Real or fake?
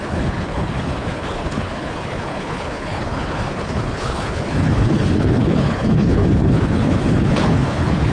fake